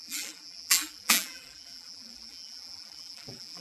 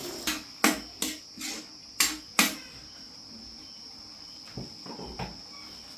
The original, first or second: second